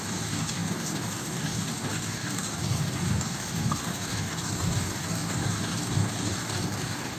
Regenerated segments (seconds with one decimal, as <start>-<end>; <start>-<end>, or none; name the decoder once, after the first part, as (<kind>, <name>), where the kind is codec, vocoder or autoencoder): 0.0-7.2 (codec, DAC)